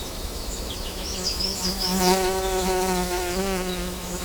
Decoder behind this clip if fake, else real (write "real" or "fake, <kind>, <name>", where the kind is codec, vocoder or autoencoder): fake, autoencoder, DAC-VAE